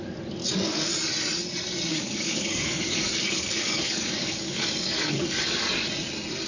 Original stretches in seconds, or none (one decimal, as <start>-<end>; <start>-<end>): 0.0-0.4; 0.9-1.9; 5.8-6.5